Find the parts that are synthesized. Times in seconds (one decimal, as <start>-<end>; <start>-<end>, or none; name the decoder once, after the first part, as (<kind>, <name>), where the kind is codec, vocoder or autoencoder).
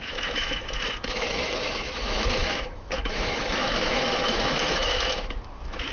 0.0-5.9 (autoencoder, DAC-VAE)